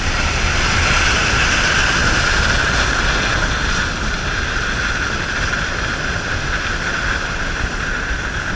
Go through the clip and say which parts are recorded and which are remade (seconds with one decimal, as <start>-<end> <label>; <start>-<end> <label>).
0.0-8.6 recorded